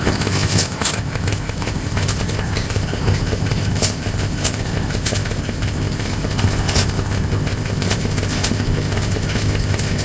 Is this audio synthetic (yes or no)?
yes